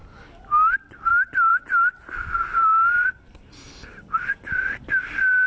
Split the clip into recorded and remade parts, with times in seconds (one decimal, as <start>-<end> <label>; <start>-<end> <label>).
0.0-5.5 recorded

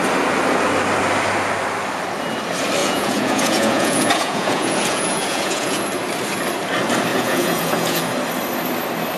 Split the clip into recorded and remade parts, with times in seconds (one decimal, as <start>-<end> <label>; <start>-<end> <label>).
0.0-2.8 recorded; 2.8-5.8 remade; 5.8-7.1 recorded; 7.1-8.0 remade; 8.0-9.2 recorded

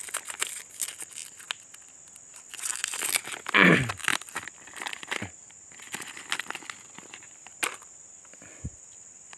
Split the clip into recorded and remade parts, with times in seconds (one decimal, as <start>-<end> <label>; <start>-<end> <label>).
0.0-9.4 recorded

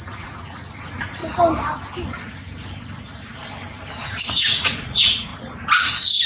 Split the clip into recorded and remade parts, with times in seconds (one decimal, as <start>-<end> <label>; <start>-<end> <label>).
0.0-1.2 remade; 1.2-4.3 recorded; 4.3-5.3 remade; 5.3-6.3 recorded

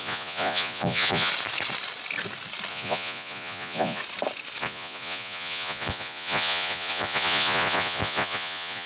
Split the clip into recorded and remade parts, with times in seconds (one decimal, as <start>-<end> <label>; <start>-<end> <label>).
0.0-1.3 remade; 1.3-2.7 recorded; 2.7-4.0 remade; 4.0-4.6 recorded; 4.6-8.9 remade

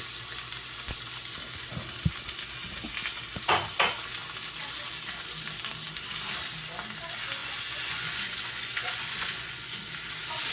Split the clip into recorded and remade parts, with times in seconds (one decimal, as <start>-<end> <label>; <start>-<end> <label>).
0.0-7.4 recorded; 7.4-9.8 remade; 9.8-10.5 recorded

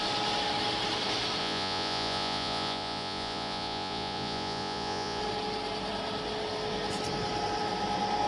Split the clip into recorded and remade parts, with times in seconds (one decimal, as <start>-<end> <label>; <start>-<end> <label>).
0.0-1.4 recorded; 1.4-5.2 remade; 5.2-8.3 recorded

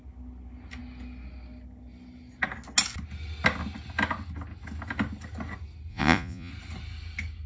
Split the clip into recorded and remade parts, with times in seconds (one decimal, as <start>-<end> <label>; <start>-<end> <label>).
0.0-5.9 recorded; 5.9-6.5 remade; 6.5-7.5 recorded